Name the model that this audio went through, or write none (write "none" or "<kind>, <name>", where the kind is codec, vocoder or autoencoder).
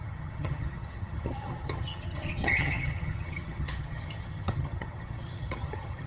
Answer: vocoder, HiFi-GAN